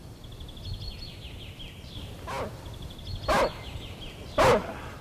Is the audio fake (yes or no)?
no